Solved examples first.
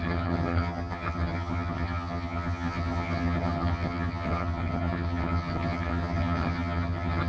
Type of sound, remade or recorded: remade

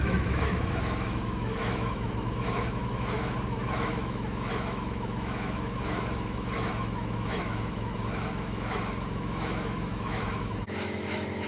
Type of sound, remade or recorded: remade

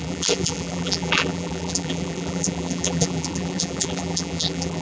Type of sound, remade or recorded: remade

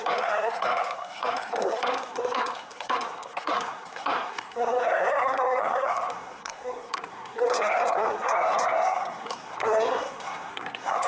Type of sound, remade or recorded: remade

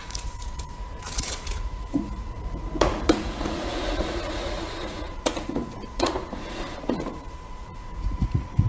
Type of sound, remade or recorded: remade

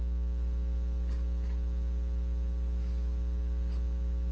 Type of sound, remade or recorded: recorded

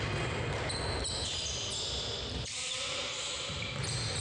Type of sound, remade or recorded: recorded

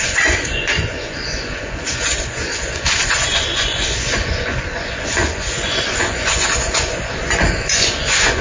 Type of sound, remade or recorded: remade